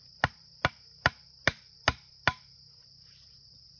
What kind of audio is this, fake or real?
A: real